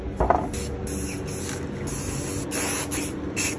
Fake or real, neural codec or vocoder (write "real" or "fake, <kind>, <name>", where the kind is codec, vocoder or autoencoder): real